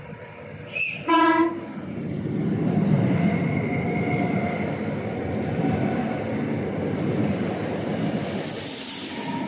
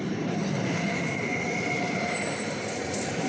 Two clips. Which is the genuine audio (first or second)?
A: first